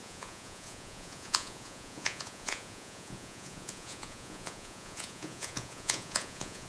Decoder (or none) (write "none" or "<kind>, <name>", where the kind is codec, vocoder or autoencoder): vocoder, Vocos